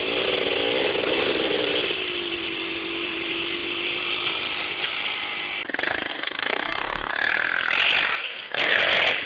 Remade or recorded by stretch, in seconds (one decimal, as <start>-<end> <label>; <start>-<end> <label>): 0.0-6.1 recorded; 6.1-7.1 remade; 7.1-8.1 recorded; 8.1-8.8 remade; 8.8-9.3 recorded